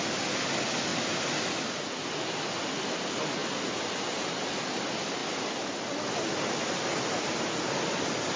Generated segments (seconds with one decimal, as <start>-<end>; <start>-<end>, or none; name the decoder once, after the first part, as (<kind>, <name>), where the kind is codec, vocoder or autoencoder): none